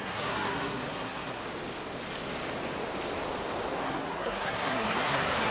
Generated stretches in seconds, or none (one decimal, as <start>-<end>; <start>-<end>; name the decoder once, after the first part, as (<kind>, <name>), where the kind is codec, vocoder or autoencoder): 0.0-1.4 (codec, SNAC); 3.8-5.5